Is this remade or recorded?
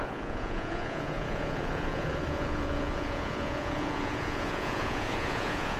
remade